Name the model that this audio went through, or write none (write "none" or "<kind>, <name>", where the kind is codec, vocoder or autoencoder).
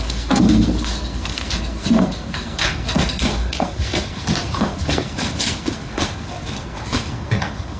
codec, SNAC